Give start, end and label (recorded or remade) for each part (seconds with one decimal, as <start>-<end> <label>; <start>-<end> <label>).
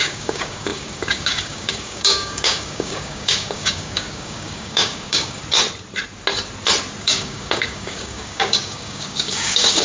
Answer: 0.0-5.4 remade; 5.4-7.0 recorded; 7.0-9.8 remade